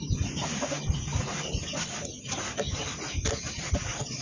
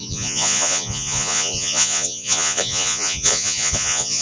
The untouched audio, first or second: first